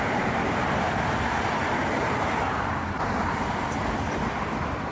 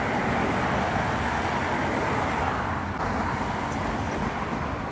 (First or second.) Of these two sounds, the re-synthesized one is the first